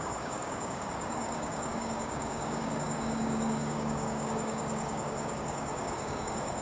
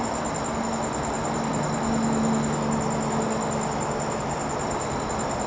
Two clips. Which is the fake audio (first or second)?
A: first